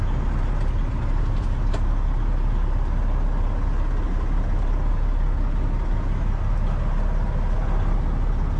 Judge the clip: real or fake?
real